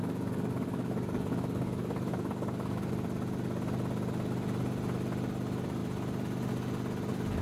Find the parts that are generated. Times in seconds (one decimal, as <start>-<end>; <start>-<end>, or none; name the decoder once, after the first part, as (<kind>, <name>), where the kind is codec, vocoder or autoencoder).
0.0-2.9 (codec, DAC)